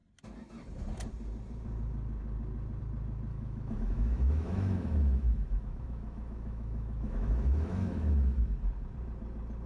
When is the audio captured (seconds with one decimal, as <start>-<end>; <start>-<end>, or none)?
0.0-3.3; 8.4-9.7